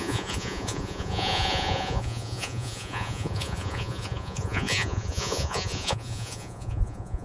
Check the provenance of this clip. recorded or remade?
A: remade